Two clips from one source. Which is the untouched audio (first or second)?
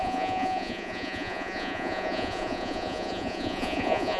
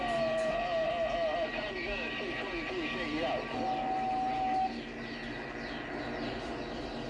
second